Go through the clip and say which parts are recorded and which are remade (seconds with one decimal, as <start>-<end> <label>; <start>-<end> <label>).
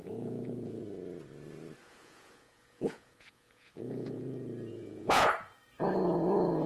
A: 0.0-0.8 remade; 0.8-1.8 recorded; 1.8-4.2 remade; 4.2-4.7 recorded; 4.7-5.3 remade; 5.3-6.7 recorded